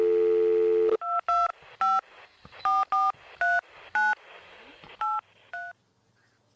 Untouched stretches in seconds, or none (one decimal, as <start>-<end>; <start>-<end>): 0.0-6.6